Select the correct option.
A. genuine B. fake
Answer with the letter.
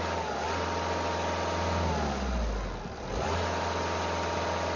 A